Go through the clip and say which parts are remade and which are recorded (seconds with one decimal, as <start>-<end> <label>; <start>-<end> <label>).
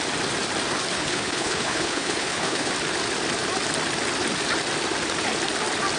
0.0-0.9 recorded; 0.9-2.7 remade; 2.7-6.0 recorded